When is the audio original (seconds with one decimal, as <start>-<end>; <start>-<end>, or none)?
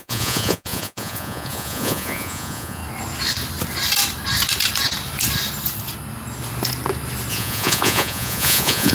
2.8-7.3